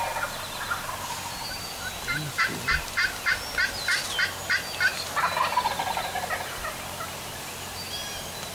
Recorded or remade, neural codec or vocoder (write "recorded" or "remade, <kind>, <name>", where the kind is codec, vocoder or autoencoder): recorded